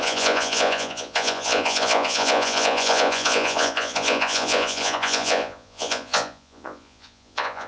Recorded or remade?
remade